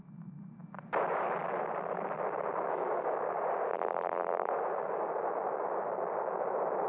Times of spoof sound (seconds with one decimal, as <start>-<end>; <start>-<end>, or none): 3.7-4.5